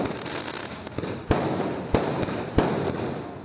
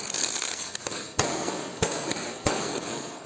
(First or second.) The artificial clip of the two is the second